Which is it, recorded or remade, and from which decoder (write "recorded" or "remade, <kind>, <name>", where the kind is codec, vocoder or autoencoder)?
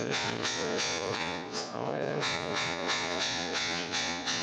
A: remade, vocoder, Vocos